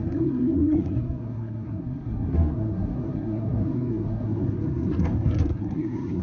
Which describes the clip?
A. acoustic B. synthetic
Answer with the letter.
B